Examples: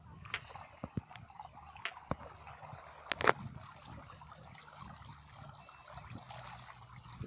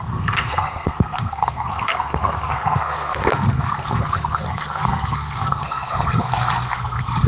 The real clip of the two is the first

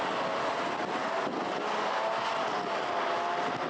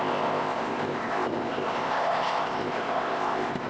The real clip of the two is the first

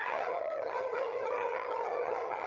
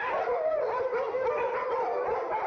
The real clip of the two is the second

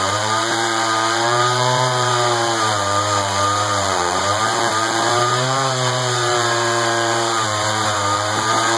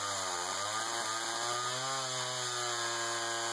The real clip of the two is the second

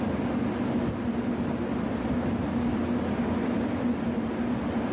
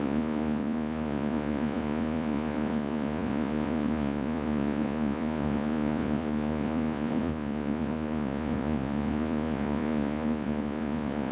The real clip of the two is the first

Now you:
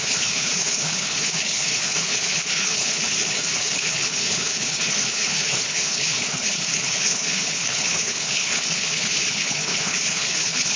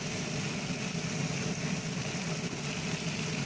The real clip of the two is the second